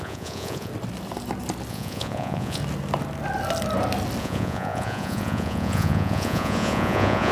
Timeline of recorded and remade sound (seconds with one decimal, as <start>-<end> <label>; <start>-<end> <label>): 0.0-0.7 remade; 0.7-1.7 recorded; 1.7-2.6 remade; 2.6-4.2 recorded; 4.2-7.3 remade